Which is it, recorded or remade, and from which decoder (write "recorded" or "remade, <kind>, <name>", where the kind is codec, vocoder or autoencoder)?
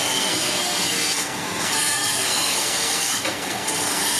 remade, codec, SNAC